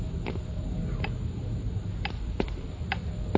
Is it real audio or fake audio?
real